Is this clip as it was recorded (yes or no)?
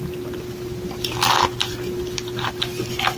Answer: yes